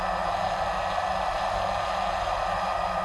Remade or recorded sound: recorded